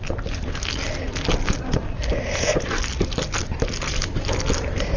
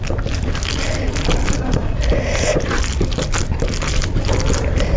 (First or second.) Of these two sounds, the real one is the first